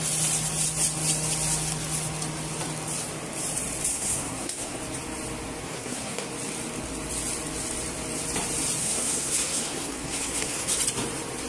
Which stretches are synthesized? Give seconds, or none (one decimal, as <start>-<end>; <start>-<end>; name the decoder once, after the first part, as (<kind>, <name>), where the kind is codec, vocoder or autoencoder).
3.9-4.8 (codec, SNAC); 5.6-6.3; 8.8-10.8